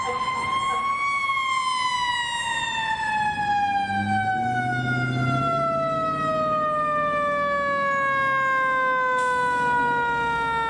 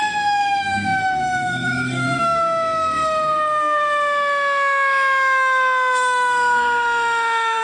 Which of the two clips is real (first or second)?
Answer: first